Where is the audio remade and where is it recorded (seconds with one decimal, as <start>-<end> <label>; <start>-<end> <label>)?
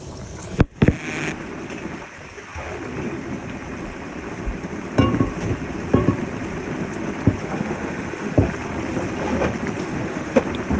0.0-7.4 recorded; 7.4-8.5 remade; 8.5-9.8 recorded; 9.8-10.4 remade; 10.4-10.8 recorded